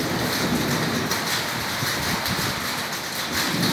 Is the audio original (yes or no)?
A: yes